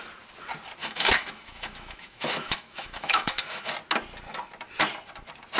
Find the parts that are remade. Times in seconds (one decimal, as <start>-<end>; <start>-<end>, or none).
0.8-3.7